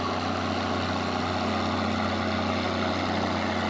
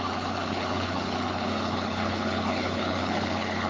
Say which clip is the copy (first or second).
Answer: second